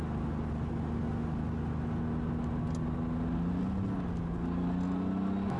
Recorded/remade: recorded